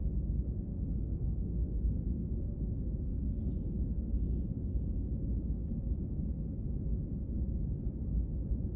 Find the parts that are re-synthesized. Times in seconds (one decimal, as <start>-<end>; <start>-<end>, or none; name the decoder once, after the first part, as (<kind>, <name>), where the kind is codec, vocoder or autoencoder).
0.0-4.3 (codec, SNAC)